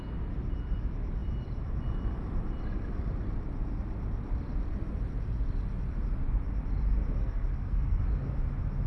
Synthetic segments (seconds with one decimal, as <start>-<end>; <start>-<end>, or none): 7.2-8.0